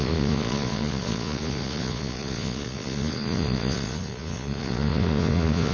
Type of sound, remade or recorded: remade